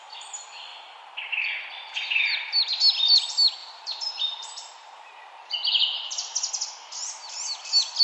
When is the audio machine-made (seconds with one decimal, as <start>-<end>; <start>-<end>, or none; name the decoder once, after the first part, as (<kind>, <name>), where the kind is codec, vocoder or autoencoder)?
3.6-6.5 (vocoder, BigVGAN v2)